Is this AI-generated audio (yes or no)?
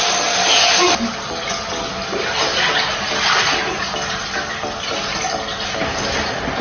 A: no